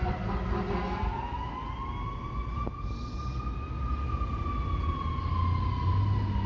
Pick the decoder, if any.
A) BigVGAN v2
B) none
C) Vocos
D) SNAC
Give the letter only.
B